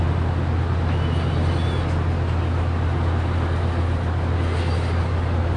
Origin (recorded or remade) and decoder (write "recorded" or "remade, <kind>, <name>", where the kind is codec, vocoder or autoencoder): recorded